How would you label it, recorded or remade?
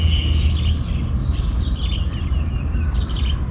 recorded